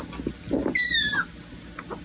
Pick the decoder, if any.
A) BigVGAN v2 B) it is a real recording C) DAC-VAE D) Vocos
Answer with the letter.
B